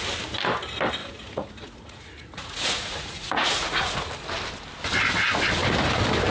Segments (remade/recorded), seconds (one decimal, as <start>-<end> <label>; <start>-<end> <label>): 0.0-1.0 recorded; 1.0-4.1 remade; 4.1-6.3 recorded